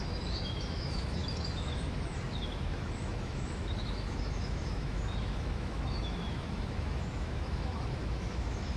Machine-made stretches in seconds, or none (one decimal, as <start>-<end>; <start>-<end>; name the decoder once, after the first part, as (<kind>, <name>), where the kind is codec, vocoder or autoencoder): 0.0-8.8 (autoencoder, DAC-VAE)